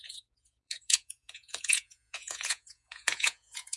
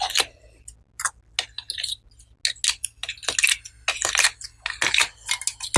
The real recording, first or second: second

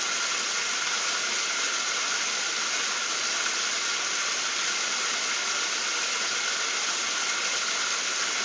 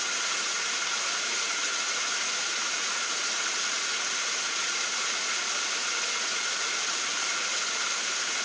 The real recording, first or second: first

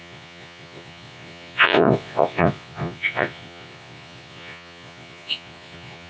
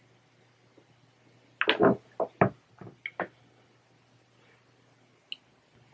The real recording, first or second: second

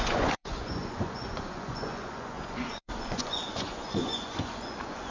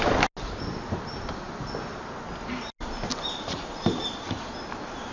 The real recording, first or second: second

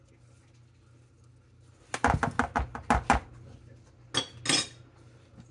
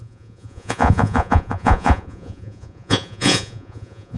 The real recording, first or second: first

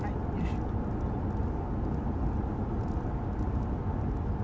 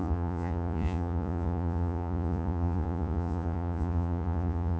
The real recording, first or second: first